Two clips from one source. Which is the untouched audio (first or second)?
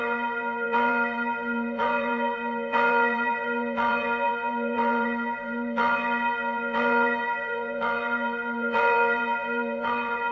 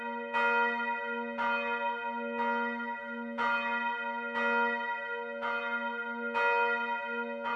second